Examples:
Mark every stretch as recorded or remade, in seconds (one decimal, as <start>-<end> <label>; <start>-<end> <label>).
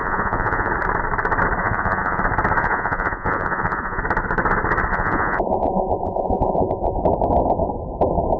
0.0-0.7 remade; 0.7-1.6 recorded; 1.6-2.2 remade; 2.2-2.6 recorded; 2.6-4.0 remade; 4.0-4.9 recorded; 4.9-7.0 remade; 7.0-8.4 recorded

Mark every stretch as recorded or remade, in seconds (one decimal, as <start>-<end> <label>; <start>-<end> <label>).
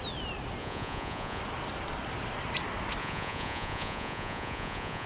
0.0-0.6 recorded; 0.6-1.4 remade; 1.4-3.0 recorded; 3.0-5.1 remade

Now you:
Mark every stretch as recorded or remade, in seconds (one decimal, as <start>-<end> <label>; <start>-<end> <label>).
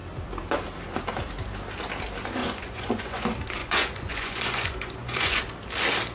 0.0-2.4 recorded; 2.4-3.2 remade; 3.2-3.6 recorded; 3.6-5.4 remade; 5.4-6.1 recorded